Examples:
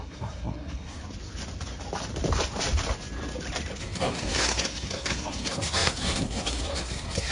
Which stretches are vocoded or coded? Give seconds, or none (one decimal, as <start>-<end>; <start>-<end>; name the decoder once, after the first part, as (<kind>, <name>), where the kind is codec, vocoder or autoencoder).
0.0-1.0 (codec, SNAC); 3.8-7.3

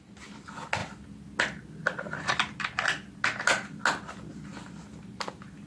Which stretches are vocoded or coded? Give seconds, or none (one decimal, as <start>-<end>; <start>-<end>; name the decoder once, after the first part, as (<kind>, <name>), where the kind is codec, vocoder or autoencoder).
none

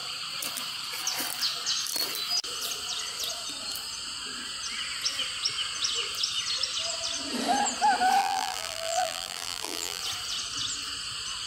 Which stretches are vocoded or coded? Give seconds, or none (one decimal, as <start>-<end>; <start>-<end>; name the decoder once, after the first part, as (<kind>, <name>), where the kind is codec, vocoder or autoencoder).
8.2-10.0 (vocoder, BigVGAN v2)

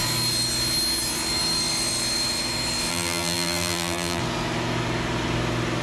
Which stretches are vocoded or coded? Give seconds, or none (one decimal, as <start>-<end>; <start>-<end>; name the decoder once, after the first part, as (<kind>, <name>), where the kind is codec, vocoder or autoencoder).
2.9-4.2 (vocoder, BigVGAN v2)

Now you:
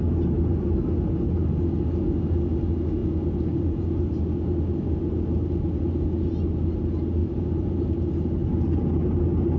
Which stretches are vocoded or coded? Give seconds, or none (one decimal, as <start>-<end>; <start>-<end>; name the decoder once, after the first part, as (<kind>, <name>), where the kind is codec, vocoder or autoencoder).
7.2-7.8 (vocoder, BigVGAN v2)

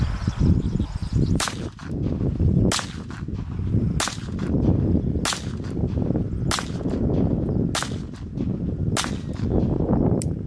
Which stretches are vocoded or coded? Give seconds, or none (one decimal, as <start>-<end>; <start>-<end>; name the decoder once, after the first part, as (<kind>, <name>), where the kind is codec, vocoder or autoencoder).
1.0-2.6 (vocoder, BigVGAN v2)

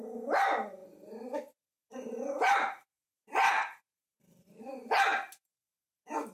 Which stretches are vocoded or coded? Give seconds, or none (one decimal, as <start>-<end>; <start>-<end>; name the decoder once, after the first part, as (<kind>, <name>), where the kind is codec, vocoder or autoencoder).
none

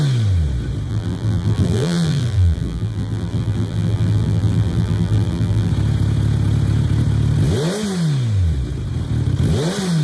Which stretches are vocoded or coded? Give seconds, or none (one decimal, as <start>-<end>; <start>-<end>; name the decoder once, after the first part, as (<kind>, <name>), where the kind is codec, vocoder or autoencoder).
0.9-5.7 (vocoder, BigVGAN v2)